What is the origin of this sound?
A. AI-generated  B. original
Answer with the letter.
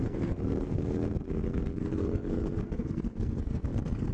A